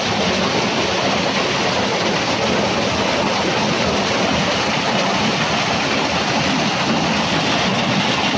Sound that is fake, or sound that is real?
real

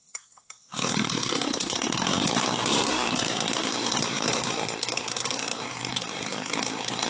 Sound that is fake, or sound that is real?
fake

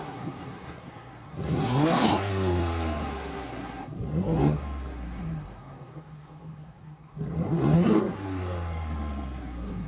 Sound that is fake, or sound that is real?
fake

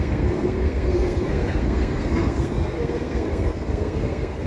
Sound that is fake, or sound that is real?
fake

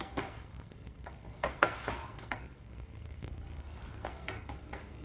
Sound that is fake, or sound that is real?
fake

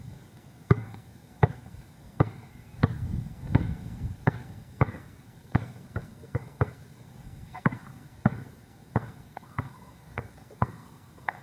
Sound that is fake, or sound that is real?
fake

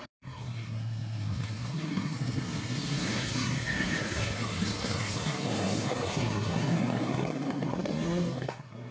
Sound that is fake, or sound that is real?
fake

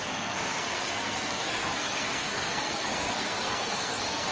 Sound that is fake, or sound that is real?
fake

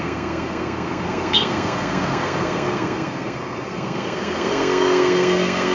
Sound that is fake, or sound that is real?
fake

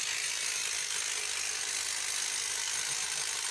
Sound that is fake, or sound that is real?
real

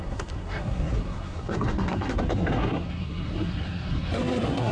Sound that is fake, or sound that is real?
fake